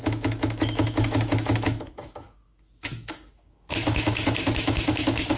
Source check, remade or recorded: remade